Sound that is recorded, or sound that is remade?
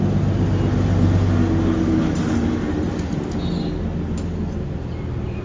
recorded